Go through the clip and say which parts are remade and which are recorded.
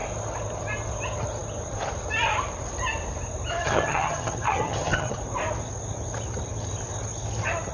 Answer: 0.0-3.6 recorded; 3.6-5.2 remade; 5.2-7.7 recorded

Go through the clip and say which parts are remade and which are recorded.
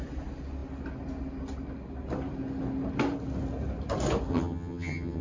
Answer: 0.0-4.3 recorded; 4.3-5.2 remade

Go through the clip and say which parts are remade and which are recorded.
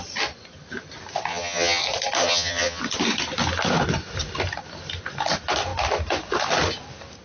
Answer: 0.0-1.3 recorded; 1.3-1.8 remade; 1.8-2.2 recorded; 2.2-2.8 remade; 2.8-7.2 recorded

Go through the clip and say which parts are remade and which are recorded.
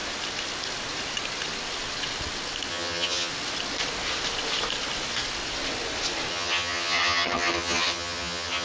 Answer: 0.0-2.7 recorded; 2.7-3.3 remade; 3.3-6.3 recorded; 6.3-8.6 remade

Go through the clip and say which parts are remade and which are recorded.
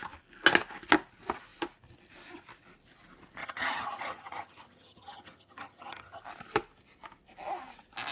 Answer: 0.0-3.4 recorded; 3.4-6.2 remade; 6.2-8.1 recorded